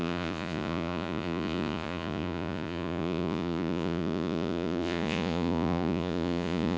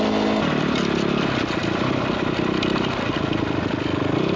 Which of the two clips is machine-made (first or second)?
first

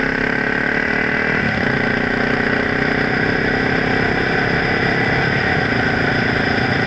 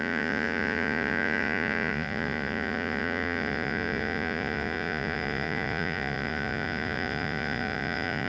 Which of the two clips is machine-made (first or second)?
second